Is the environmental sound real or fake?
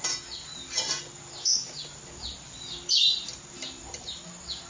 real